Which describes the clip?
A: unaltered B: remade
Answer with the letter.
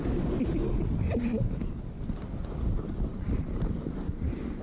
A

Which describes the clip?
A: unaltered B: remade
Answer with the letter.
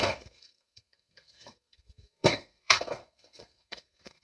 B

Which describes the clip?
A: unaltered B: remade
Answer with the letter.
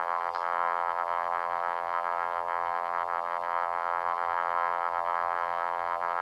B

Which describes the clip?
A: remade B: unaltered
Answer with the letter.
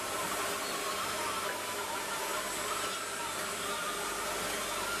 B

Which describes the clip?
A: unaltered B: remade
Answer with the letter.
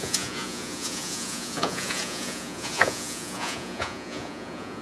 B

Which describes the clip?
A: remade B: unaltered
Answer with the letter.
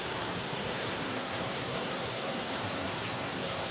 A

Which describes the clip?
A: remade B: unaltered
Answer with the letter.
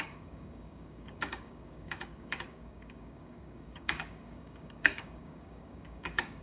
A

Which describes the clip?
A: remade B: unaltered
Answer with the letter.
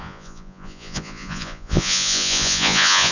A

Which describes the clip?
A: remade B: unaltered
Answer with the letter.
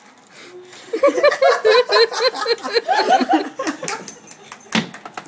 B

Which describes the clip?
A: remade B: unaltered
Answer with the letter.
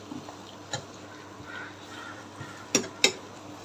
B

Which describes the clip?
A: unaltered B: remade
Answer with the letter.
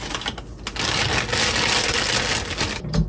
A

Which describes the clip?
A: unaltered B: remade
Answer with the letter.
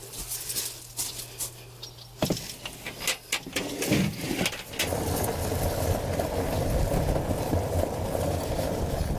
A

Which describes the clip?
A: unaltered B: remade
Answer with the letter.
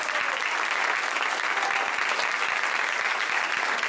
A